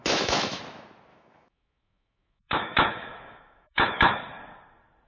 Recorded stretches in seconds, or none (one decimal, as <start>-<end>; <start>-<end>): 0.6-1.1; 4.2-5.1